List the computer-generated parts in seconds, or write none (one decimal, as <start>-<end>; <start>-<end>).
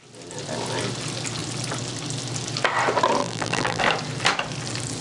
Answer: 3.2-3.8